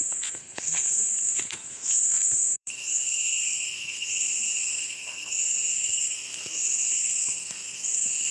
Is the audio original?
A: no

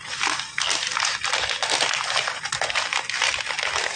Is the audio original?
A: yes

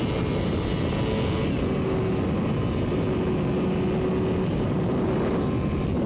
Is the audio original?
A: yes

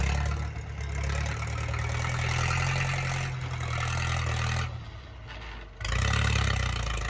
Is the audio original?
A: yes